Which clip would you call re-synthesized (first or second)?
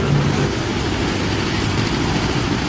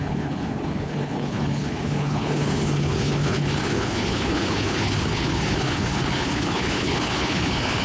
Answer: second